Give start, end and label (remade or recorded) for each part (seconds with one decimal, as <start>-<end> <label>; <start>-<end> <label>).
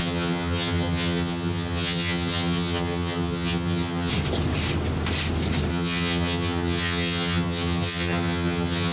0.0-4.1 remade; 4.1-5.7 recorded; 5.7-8.9 remade